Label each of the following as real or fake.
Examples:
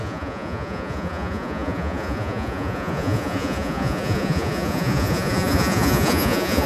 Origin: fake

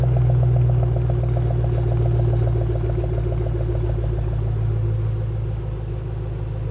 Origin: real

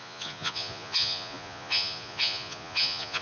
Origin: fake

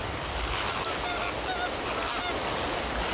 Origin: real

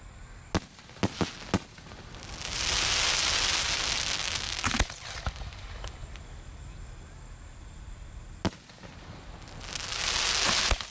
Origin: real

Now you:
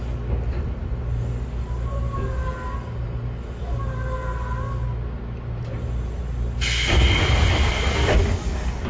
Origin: real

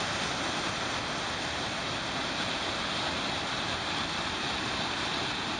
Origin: real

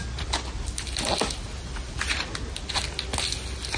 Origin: real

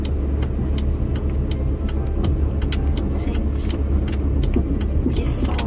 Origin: real